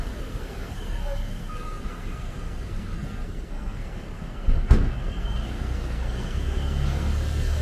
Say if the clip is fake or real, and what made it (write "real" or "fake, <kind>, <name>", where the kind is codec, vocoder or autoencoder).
fake, codec, SNAC